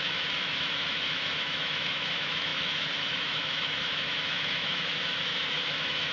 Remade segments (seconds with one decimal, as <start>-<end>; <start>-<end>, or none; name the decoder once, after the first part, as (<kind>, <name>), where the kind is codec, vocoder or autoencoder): 0.0-6.1 (autoencoder, DAC-VAE)